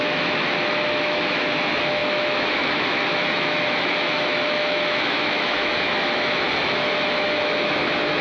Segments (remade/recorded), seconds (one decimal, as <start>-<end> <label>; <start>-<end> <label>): 0.0-8.2 remade